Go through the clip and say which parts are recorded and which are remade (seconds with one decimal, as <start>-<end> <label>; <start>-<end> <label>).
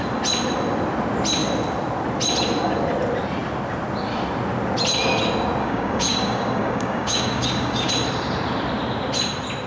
0.0-5.6 recorded; 5.6-7.9 remade; 7.9-9.7 recorded